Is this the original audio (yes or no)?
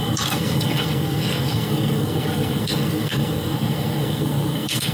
no